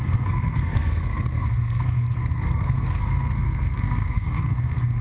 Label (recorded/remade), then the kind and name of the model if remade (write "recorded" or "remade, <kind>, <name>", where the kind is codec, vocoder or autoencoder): remade, codec, SNAC